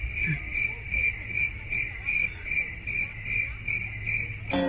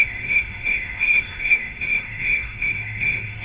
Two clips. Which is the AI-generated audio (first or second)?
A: second